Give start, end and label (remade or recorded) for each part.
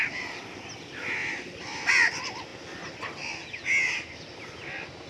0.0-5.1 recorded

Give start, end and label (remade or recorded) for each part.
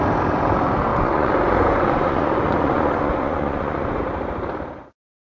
0.0-0.9 recorded; 0.9-4.0 remade; 4.0-5.2 recorded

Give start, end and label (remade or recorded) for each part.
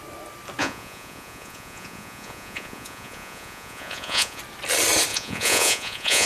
0.0-0.6 recorded; 0.6-4.4 remade; 4.4-5.1 recorded; 5.1-6.3 remade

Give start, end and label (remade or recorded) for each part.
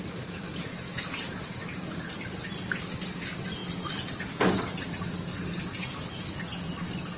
0.0-7.2 recorded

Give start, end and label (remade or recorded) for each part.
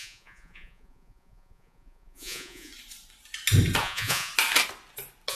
0.0-2.7 remade; 2.7-3.8 recorded; 3.8-4.3 remade; 4.3-5.3 recorded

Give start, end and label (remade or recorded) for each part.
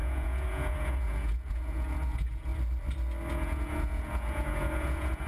0.0-2.5 remade; 2.5-3.3 recorded; 3.3-5.3 remade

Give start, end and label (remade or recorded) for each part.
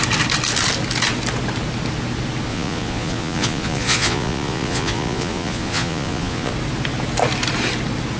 0.0-2.5 recorded; 2.5-6.5 remade; 6.5-8.2 recorded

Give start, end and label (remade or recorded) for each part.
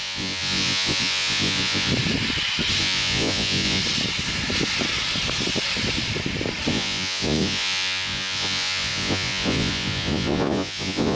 0.0-1.9 remade; 1.9-2.8 recorded; 2.8-3.8 remade; 3.8-6.7 recorded; 6.7-11.2 remade